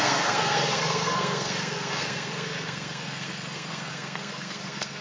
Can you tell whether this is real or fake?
fake